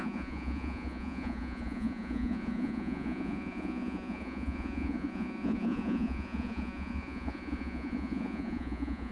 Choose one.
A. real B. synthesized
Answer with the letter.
B